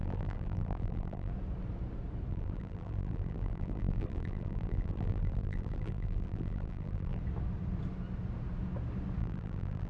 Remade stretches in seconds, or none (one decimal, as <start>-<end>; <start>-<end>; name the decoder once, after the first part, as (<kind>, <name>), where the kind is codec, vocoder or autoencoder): 0.0-1.3 (vocoder, BigVGAN v2); 2.3-7.2; 9.2-9.9